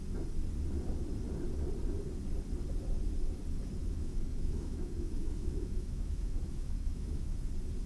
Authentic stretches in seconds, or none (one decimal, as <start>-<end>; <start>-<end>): 0.0-3.8; 7.5-7.9